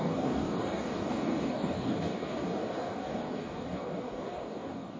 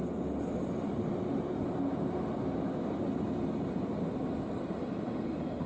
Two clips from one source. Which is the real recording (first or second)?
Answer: second